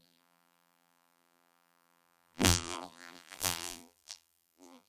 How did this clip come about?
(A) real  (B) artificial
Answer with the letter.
B